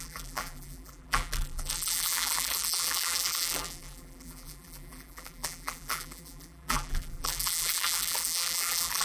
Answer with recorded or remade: remade